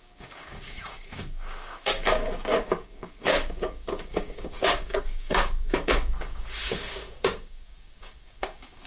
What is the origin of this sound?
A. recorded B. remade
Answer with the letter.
B